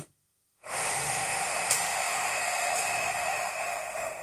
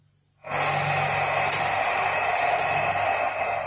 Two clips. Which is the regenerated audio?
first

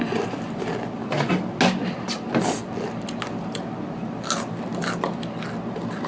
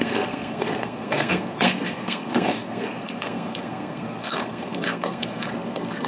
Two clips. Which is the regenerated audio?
second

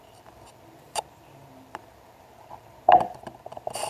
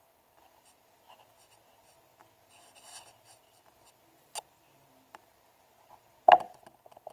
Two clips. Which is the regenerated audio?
first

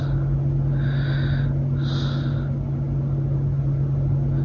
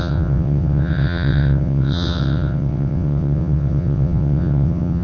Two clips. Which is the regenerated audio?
second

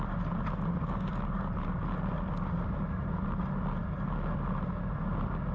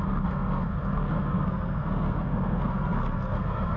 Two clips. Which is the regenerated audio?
second